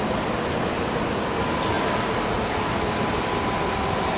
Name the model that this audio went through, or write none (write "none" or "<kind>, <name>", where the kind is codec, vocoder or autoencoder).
none